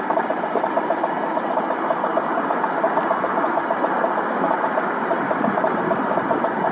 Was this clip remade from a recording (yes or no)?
no